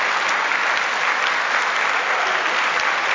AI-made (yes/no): no